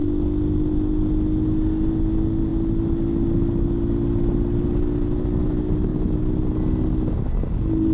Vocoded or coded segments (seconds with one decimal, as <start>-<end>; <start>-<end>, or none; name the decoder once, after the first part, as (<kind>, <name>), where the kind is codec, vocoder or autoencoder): none